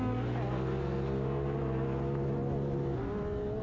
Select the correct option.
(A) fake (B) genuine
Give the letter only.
B